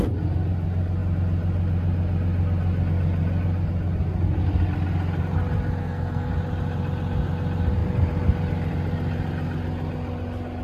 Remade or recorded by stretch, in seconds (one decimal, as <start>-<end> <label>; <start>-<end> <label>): 0.0-5.8 recorded; 5.8-6.3 remade; 6.3-10.6 recorded